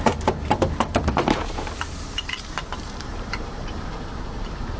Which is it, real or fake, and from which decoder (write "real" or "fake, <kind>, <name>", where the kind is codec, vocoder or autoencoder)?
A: fake, vocoder, BigVGAN v2